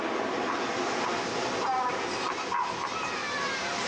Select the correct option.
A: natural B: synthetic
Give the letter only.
A